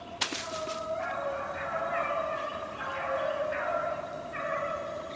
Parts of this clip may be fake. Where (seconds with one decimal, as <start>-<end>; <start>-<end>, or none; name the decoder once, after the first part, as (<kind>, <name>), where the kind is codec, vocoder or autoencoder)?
none